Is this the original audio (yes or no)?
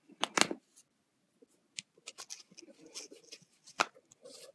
yes